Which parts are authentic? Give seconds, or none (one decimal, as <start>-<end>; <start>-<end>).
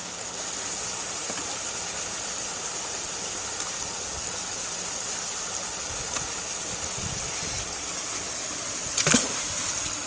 0.0-10.1